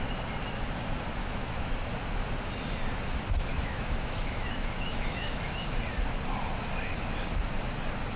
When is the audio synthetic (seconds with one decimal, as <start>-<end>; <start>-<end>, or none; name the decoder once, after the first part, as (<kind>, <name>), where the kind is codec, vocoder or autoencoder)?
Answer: 1.2-1.7 (autoencoder, DAC-VAE); 3.5-5.8